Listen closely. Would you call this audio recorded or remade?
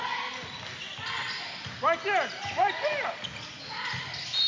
recorded